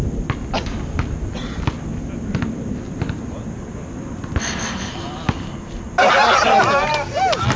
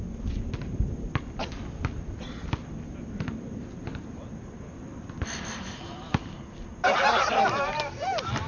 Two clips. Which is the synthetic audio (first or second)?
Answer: second